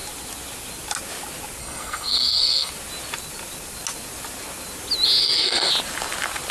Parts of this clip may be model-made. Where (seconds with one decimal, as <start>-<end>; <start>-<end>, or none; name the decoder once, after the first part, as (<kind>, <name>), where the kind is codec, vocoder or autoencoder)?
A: 1.6-2.7 (codec, SNAC); 5.2-5.7